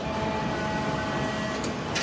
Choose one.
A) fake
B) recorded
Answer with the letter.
B